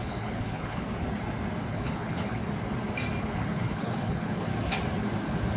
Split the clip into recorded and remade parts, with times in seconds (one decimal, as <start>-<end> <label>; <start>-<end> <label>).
0.0-0.9 remade; 0.9-1.7 recorded; 1.7-2.4 remade; 2.4-3.2 recorded; 3.2-4.5 remade; 4.5-5.6 recorded